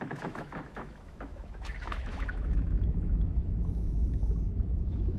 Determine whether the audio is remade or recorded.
remade